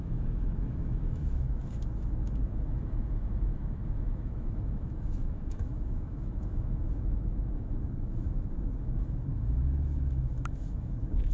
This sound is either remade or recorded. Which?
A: remade